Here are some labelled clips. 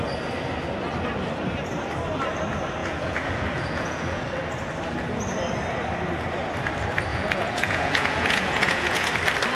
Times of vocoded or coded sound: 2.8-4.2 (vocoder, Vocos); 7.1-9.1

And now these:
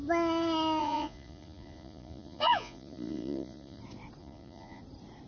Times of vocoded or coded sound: 0.8-3.8 (vocoder, Vocos); 4.2-4.8

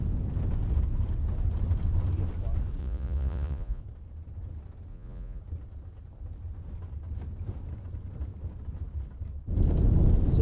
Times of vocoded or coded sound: 2.8-3.8 (vocoder, Vocos); 4.9-5.4

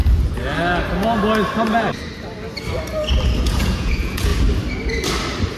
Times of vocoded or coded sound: 3.4-4.3 (vocoder, Vocos)

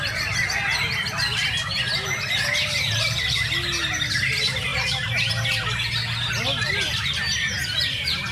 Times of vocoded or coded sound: none

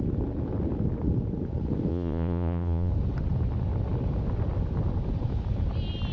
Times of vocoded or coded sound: 1.9-2.9 (vocoder, Vocos)

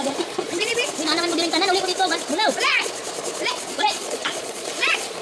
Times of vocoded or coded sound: 0.0-0.7 (vocoder, Vocos); 3.8-5.2